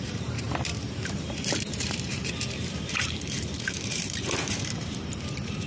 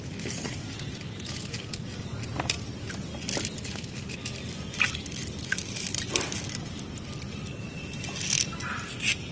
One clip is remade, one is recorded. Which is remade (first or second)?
first